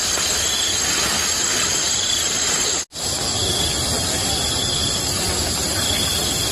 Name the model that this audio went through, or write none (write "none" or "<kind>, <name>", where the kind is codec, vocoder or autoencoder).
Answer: none